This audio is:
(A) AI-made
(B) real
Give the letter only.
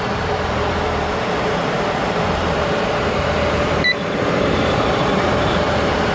A